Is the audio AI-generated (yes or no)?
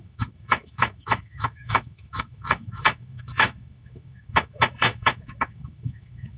yes